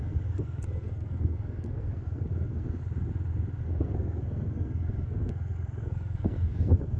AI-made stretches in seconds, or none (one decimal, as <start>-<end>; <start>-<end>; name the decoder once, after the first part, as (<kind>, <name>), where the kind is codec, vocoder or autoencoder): 0.0-2.8 (codec, SNAC); 3.6-7.0